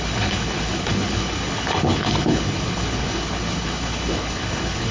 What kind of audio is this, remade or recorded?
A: remade